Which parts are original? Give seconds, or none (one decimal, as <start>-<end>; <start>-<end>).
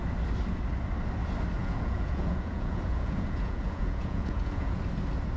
0.0-1.6; 4.8-5.4